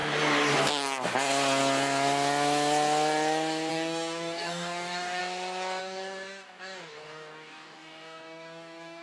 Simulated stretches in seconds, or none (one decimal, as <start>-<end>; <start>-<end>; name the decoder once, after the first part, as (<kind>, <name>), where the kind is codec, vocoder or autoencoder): 3.7-5.2 (codec, DAC); 5.8-9.0